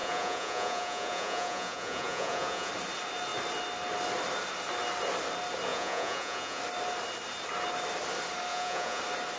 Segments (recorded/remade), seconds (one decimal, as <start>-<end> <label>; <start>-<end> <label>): 0.0-2.7 remade; 2.7-5.7 recorded; 5.7-6.6 remade; 6.6-8.5 recorded; 8.5-9.0 remade; 9.0-9.4 recorded